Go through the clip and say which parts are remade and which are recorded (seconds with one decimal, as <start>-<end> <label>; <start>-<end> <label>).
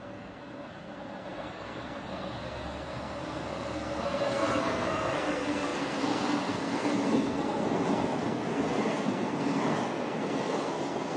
0.0-11.2 remade